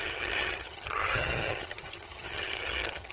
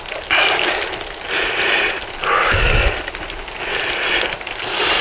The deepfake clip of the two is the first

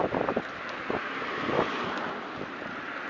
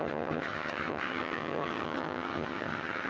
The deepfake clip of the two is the second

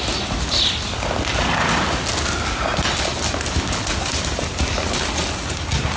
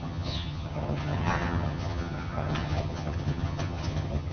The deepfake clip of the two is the second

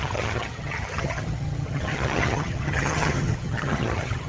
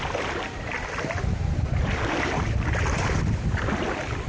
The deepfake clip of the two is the first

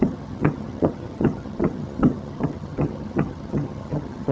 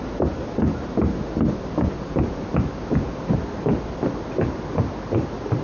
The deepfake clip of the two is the first